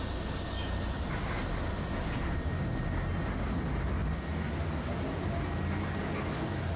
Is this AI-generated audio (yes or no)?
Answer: no